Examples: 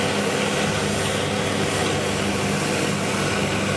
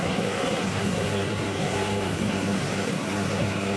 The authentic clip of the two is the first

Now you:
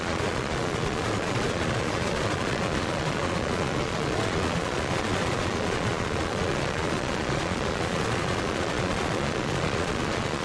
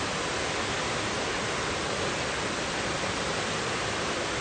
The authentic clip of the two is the second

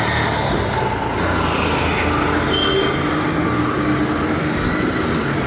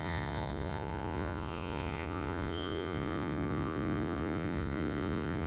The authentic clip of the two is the first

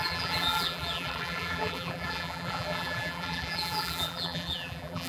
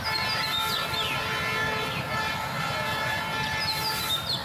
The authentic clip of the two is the second